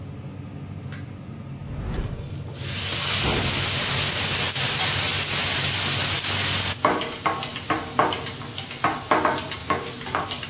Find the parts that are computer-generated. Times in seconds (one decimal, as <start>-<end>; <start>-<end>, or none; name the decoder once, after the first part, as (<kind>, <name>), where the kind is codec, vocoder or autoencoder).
none